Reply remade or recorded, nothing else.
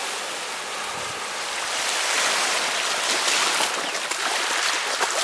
recorded